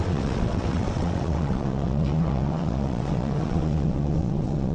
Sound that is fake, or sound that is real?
fake